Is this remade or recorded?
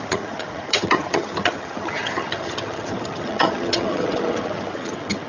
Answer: remade